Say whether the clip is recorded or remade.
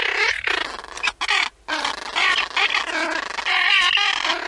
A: recorded